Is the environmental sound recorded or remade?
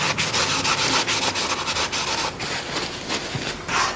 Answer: recorded